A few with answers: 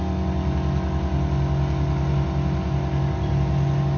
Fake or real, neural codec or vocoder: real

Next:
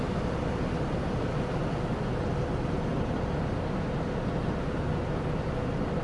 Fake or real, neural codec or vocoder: real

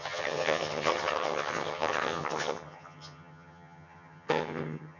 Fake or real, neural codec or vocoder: fake, vocoder, HiFi-GAN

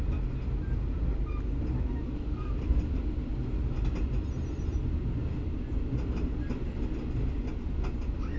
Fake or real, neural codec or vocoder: real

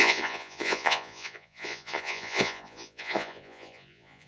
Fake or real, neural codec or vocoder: fake, vocoder, Vocos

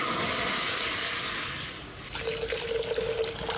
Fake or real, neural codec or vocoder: real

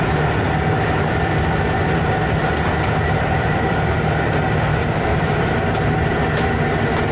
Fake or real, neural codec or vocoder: real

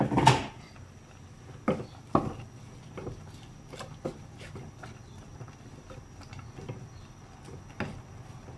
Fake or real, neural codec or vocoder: real